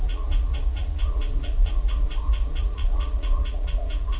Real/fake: fake